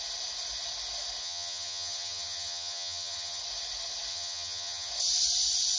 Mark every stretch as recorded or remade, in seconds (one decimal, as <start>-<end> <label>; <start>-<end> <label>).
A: 0.0-1.2 recorded; 1.2-3.4 remade; 3.4-4.1 recorded; 4.1-4.9 remade; 4.9-5.8 recorded